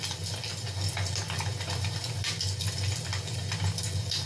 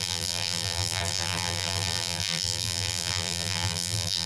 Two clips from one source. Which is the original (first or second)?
first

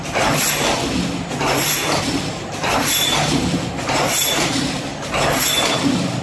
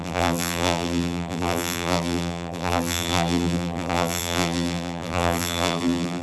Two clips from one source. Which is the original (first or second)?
first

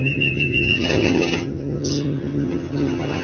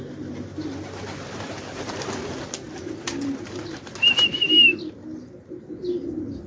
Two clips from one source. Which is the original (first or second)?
second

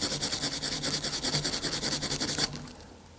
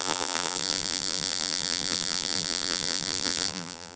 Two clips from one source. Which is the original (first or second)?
first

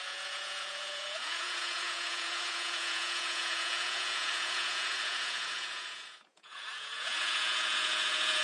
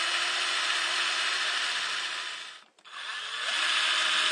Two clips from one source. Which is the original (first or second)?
second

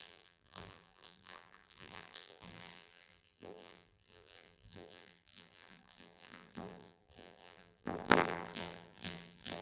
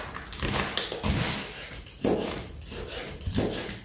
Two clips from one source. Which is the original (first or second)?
second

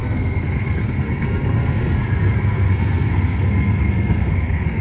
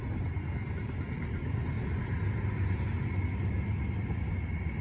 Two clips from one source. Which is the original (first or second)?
second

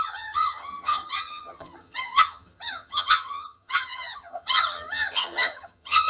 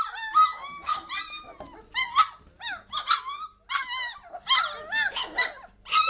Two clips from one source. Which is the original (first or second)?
second